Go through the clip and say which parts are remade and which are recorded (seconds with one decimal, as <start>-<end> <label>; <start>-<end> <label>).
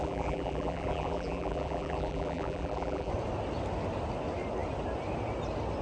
0.0-3.1 remade; 3.1-5.8 recorded